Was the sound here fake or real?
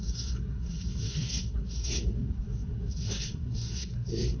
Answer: fake